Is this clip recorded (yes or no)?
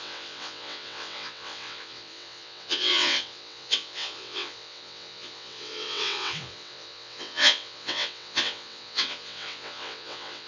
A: no